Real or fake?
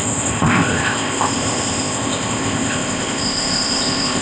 fake